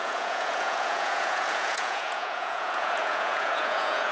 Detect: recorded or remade remade